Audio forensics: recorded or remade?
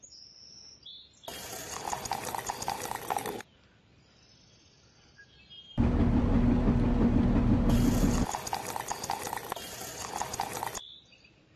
recorded